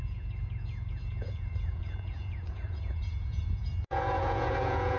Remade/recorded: remade